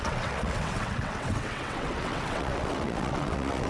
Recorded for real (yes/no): no